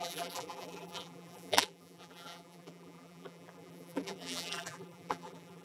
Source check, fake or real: fake